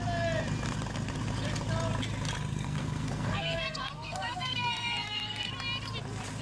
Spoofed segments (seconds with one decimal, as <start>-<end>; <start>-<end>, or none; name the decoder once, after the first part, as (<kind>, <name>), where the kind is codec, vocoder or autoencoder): 2.5-5.5 (codec, SNAC)